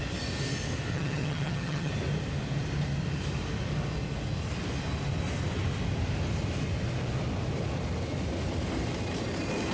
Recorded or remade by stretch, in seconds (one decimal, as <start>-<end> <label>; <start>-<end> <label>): 0.0-0.9 recorded; 0.9-1.9 remade; 1.9-9.7 recorded